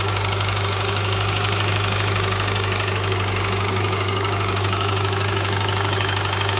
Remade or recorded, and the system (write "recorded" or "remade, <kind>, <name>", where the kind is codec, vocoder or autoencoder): remade, codec, DAC